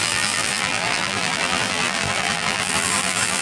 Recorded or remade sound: remade